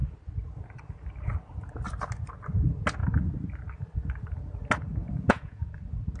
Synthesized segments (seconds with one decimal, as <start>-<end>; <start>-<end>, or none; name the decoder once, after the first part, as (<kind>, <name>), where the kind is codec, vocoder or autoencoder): 5.0-5.7 (vocoder, Vocos)